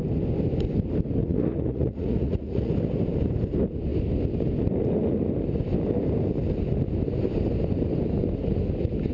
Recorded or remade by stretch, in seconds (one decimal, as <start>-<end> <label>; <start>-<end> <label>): 0.0-1.2 recorded; 1.2-2.7 remade; 2.7-9.1 recorded